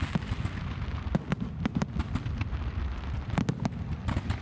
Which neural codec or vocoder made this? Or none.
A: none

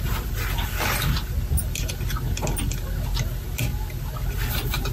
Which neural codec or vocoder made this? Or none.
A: none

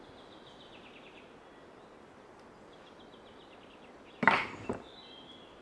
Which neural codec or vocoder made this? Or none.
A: none